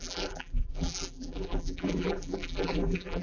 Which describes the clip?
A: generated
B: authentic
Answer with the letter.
A